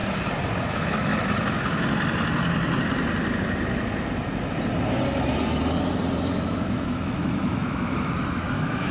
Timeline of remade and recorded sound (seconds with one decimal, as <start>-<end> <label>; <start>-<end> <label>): 0.0-0.6 recorded; 0.6-1.1 remade; 1.1-6.4 recorded; 6.4-8.9 remade